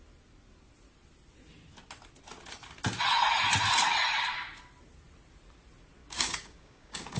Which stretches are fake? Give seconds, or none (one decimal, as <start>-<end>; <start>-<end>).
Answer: 6.0-7.2